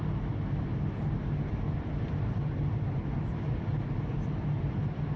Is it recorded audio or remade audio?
recorded